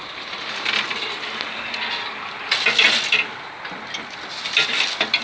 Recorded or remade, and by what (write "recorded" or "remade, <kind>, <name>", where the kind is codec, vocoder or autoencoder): recorded